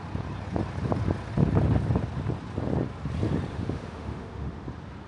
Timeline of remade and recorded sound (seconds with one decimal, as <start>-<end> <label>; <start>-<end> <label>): 0.0-3.5 recorded; 3.5-4.6 remade; 4.6-5.1 recorded